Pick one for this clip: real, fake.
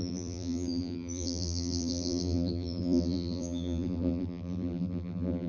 fake